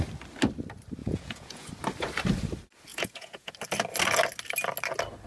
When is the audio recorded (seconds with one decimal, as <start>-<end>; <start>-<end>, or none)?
0.0-1.0; 1.7-2.9; 3.5-5.3

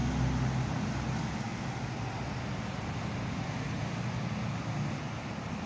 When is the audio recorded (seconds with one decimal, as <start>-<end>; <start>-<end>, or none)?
0.0-5.7